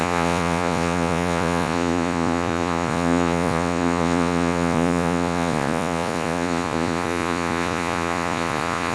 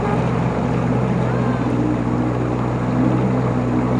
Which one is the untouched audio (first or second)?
second